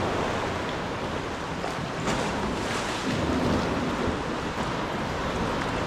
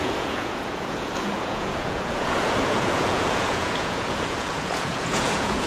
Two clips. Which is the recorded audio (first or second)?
first